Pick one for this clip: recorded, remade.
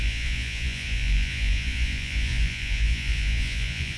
remade